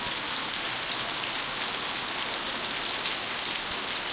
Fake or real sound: real